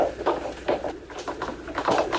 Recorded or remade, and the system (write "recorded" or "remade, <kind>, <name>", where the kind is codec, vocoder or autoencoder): recorded